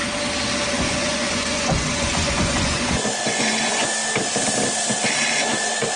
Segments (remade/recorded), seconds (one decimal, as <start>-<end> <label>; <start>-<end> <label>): 0.0-0.7 recorded; 0.7-4.0 remade; 4.0-5.4 recorded; 5.4-6.0 remade